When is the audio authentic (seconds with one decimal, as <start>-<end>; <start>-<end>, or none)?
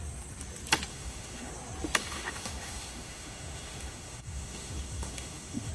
0.0-0.9; 1.5-2.0